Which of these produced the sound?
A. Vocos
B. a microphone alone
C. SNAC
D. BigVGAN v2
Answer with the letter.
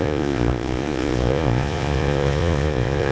A